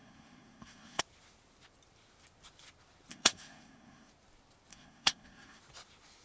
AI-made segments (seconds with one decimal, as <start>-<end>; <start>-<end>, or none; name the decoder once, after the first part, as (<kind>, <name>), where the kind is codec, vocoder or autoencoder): 0.0-1.0 (codec, SNAC); 3.1-4.1; 4.7-5.6